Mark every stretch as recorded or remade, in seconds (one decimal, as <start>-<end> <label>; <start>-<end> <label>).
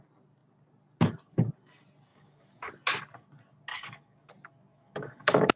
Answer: 0.0-2.1 recorded; 2.1-2.7 remade; 2.7-3.7 recorded; 3.7-4.3 remade; 4.3-4.7 recorded; 4.7-5.6 remade